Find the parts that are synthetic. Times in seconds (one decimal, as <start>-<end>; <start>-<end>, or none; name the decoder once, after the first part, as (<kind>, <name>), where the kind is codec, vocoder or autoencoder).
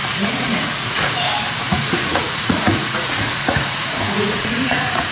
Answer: 0.0-1.1 (vocoder, Vocos); 1.6-5.1